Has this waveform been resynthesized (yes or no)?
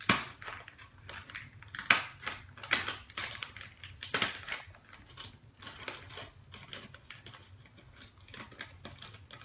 no